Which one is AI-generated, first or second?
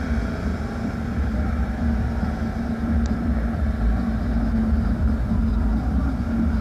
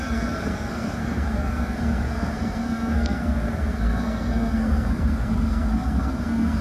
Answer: second